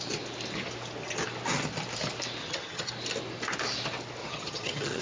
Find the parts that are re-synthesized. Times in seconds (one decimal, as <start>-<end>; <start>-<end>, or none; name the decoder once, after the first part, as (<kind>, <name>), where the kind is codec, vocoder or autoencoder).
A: 2.4-2.9 (vocoder, HiFi-GAN); 4.2-5.0